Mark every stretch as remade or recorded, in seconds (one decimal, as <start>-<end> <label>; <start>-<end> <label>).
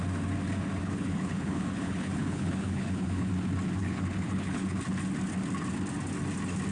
0.0-0.8 recorded; 0.8-3.3 remade; 3.3-3.8 recorded; 3.8-4.8 remade; 4.8-6.7 recorded